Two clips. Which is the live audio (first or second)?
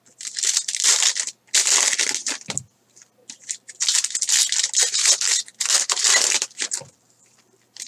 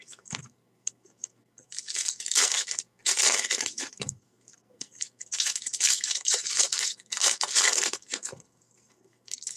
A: first